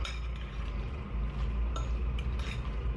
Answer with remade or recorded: recorded